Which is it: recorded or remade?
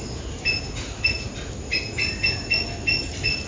recorded